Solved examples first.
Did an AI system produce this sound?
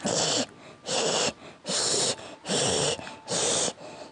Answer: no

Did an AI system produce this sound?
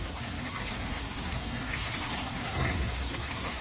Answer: yes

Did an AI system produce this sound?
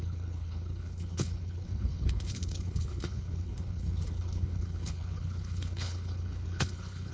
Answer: yes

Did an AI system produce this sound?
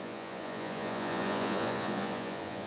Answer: yes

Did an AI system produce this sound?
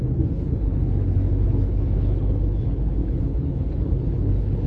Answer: yes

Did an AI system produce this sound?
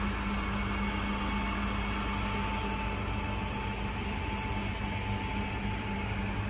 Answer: no